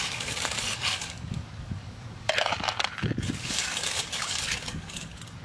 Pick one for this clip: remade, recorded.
remade